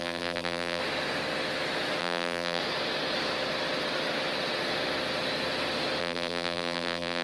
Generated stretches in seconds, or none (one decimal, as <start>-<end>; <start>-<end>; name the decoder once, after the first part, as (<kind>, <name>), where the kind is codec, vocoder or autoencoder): 0.0-0.8 (vocoder, BigVGAN v2); 2.0-2.6; 6.0-7.2